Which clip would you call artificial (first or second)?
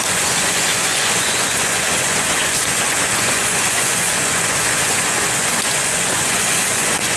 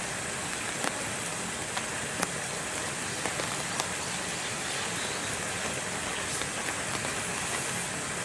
first